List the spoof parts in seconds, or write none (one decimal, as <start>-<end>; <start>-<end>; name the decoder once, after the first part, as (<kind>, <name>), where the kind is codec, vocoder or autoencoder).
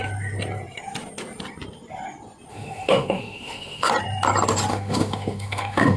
2.5-3.9 (autoencoder, DAC-VAE); 4.7-6.0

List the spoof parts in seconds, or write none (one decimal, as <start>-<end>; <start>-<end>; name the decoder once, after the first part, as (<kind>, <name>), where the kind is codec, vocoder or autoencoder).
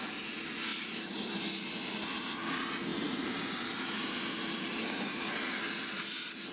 0.7-1.5 (vocoder, BigVGAN v2); 2.9-5.6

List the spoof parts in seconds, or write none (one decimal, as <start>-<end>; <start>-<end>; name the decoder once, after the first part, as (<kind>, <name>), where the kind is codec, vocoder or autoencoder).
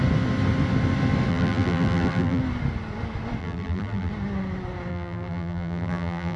1.3-2.4 (vocoder, BigVGAN v2); 3.4-4.1; 4.9-6.4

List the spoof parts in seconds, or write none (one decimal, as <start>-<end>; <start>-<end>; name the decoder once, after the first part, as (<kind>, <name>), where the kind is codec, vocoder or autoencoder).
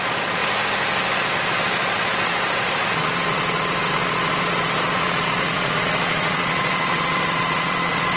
0.0-0.4 (vocoder, Vocos); 1.2-8.2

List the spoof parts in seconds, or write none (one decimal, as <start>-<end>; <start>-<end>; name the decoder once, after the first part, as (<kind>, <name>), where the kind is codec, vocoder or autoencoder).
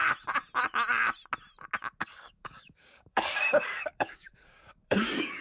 2.0-5.4 (codec, DAC)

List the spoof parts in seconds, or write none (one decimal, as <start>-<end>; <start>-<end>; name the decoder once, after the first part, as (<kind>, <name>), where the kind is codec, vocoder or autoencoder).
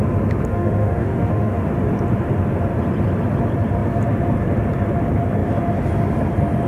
0.5-1.7 (autoencoder, DAC-VAE)